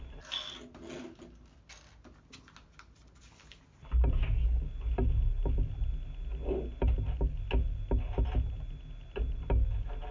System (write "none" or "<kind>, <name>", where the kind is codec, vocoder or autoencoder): none